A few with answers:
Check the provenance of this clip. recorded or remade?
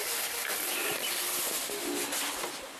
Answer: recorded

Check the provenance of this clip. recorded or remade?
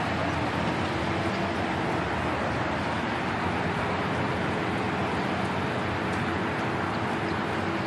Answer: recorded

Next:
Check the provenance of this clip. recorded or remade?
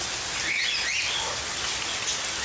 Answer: recorded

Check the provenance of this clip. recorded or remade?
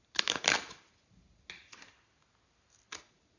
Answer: recorded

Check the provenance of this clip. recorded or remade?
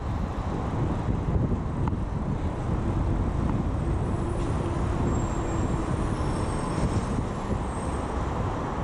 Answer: recorded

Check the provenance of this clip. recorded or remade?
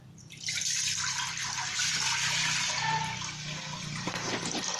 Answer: recorded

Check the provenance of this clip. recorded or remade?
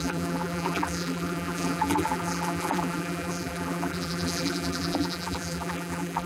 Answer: remade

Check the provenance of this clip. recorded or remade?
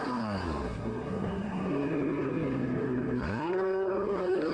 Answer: remade